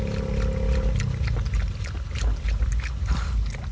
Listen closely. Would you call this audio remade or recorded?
recorded